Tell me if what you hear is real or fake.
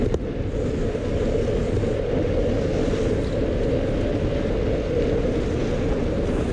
real